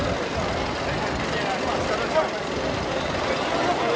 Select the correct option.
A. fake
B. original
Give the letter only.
B